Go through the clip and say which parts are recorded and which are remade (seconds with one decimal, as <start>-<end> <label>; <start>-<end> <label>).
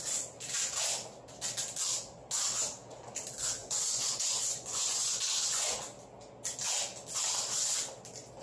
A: 0.0-3.6 recorded; 3.6-5.8 remade; 5.8-8.4 recorded